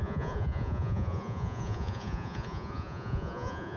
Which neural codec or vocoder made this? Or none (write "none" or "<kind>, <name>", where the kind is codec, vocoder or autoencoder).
vocoder, Vocos